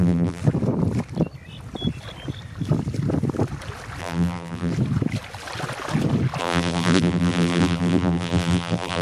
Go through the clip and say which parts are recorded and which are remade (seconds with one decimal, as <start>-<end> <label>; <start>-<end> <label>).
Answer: 0.0-0.4 remade; 0.4-4.0 recorded; 4.0-4.7 remade; 4.7-6.4 recorded; 6.4-9.0 remade